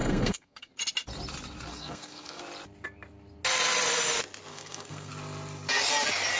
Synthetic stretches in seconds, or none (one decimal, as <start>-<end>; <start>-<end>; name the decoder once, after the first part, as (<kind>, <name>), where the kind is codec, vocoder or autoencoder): 0.0-0.7 (codec, SNAC); 1.7-2.4; 4.5-5.1